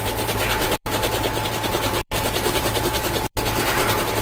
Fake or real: fake